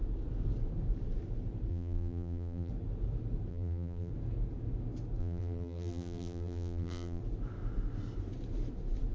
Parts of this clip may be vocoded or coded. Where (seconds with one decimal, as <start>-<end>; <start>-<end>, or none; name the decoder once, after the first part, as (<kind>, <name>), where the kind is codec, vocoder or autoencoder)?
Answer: 1.7-2.7 (vocoder, BigVGAN v2); 3.5-4.1; 5.2-7.2